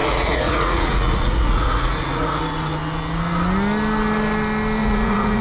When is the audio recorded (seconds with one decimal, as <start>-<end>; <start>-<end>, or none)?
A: 2.4-4.8